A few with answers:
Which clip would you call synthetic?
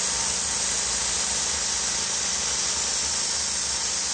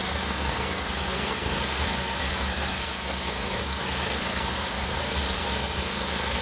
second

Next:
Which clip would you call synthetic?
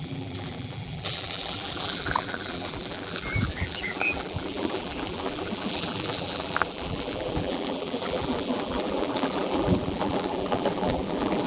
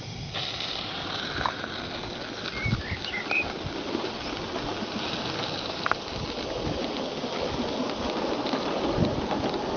first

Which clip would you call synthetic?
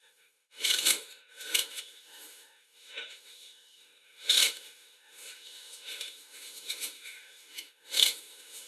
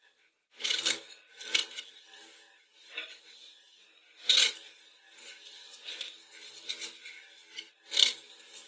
first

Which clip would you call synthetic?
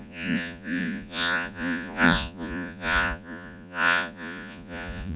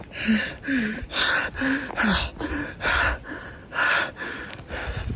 first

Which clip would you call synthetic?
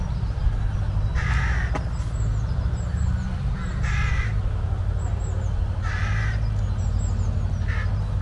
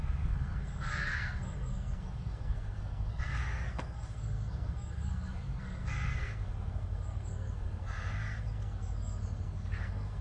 second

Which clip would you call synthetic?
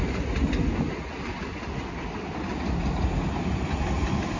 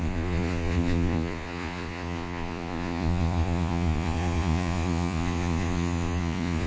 second